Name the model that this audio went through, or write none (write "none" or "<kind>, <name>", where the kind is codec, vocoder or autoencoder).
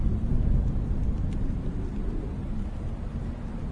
none